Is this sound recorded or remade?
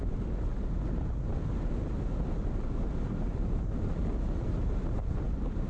recorded